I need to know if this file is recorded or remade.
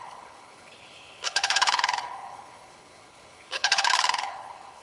remade